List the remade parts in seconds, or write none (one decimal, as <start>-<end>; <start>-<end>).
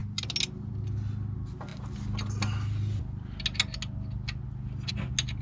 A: none